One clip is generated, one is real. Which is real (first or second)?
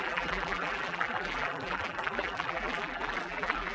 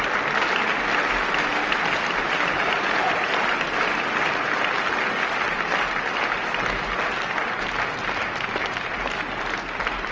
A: second